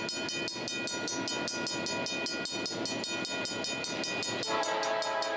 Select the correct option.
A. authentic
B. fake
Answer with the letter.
A